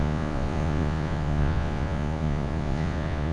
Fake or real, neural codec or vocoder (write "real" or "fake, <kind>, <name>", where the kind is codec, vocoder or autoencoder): fake, vocoder, Vocos